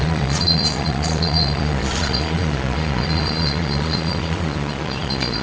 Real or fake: fake